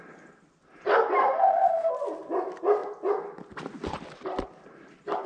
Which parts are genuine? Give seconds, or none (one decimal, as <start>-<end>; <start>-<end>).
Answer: 0.0-1.2; 1.9-5.3

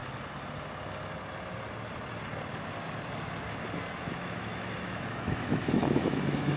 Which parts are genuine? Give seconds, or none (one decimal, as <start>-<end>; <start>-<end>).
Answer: 0.0-4.0

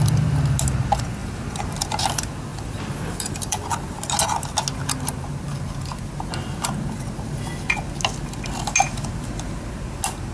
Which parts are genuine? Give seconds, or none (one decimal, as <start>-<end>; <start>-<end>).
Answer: 0.0-2.5; 4.0-10.3

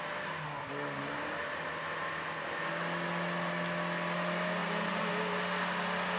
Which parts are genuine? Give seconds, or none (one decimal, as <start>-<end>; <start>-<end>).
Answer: 0.0-4.6; 5.1-6.2

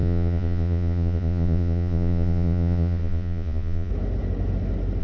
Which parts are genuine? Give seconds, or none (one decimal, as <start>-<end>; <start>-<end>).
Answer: 3.9-5.0